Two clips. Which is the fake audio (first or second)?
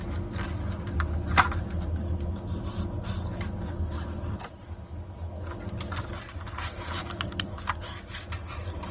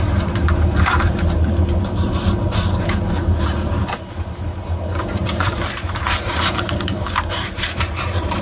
second